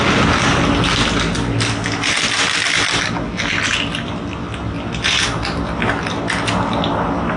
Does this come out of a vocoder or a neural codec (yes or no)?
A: no